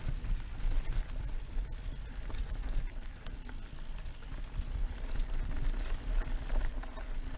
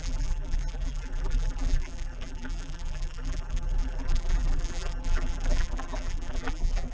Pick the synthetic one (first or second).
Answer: second